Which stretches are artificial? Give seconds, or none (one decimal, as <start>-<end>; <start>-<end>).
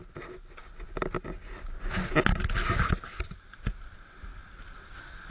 none